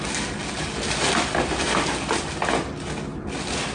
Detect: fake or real real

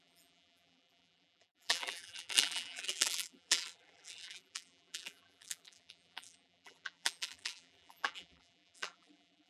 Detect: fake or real fake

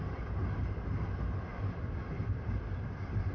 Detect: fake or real real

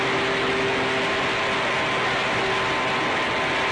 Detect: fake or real real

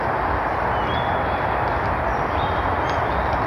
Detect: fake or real real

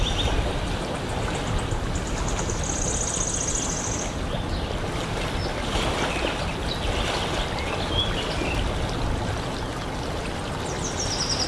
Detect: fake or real real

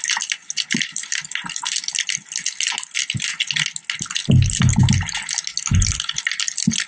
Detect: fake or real real